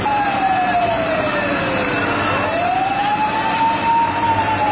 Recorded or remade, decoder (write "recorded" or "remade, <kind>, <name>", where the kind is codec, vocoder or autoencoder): recorded